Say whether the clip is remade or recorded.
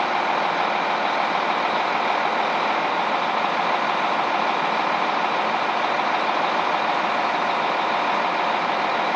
recorded